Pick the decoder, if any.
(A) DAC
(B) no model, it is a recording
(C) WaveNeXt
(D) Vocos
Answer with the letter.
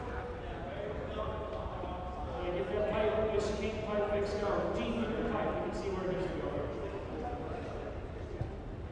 B